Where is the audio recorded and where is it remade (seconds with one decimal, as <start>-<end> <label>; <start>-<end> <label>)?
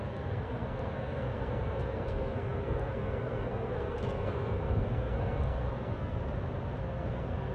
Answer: 0.0-6.2 remade; 6.2-6.8 recorded; 6.8-7.5 remade